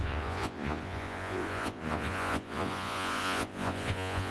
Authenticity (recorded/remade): remade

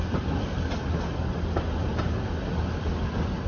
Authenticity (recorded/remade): recorded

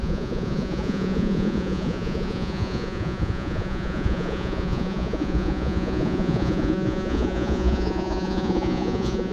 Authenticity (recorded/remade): remade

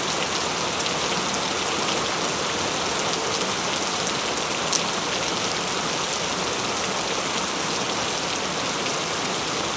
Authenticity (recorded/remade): recorded